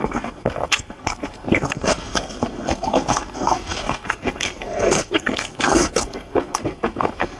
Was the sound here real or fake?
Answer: fake